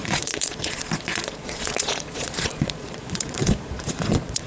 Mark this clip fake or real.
fake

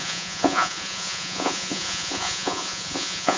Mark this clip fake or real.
fake